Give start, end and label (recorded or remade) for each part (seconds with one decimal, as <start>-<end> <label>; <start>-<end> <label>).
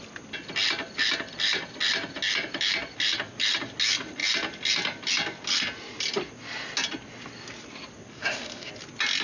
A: 0.0-8.1 recorded; 8.1-8.7 remade; 8.7-9.2 recorded